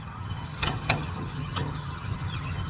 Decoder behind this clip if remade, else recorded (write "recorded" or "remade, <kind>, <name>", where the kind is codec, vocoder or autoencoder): remade, vocoder, HiFi-GAN